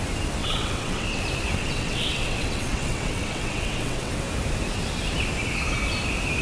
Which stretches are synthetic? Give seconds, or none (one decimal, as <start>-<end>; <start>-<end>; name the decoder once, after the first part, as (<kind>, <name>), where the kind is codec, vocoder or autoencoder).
0.4-1.2 (vocoder, WaveNeXt); 1.6-4.1